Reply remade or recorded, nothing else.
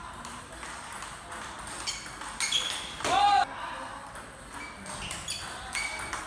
recorded